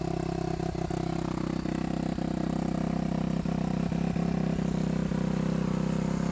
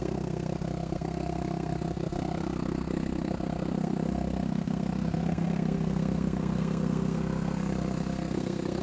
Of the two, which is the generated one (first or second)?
second